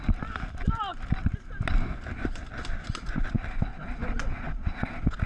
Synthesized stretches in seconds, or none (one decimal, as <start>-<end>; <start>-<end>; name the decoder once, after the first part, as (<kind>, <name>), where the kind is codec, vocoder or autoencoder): 3.7-5.3 (vocoder, Vocos)